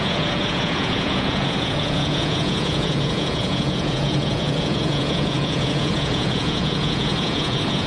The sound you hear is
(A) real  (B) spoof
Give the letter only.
B